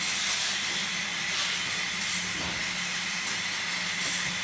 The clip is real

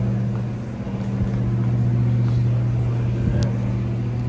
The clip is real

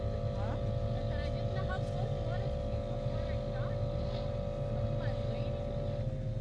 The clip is real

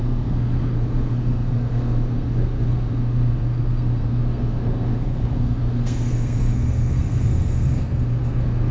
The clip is fake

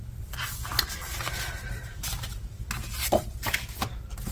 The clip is real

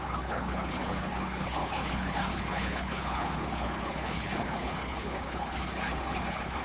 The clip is fake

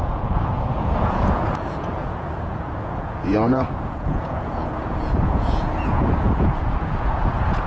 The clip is fake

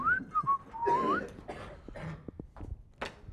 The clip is real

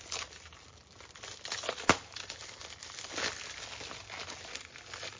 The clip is real